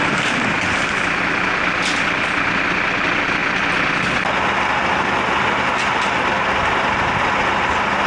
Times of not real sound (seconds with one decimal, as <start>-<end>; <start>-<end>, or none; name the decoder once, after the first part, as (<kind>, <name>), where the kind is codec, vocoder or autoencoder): none